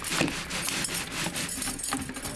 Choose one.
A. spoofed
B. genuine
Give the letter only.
B